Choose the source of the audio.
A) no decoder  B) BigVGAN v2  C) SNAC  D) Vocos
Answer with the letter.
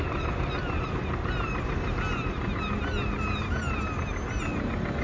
A